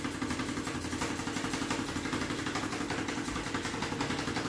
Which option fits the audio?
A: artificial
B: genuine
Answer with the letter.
B